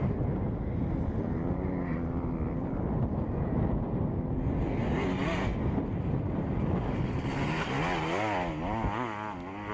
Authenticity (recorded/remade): recorded